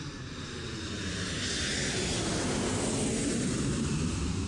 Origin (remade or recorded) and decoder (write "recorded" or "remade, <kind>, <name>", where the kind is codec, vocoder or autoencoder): recorded